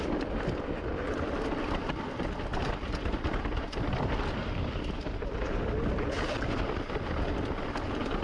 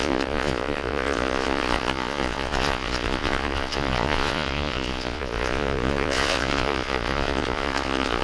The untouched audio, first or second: first